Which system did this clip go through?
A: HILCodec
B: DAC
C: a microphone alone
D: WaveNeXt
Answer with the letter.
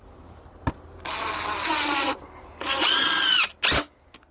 C